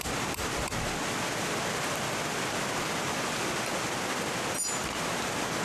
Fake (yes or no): no